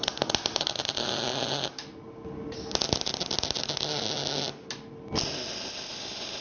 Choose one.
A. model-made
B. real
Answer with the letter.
B